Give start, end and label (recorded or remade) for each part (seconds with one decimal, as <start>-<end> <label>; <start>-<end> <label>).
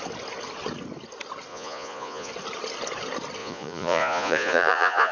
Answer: 0.0-1.5 recorded; 1.5-2.3 remade; 2.3-3.4 recorded; 3.4-5.1 remade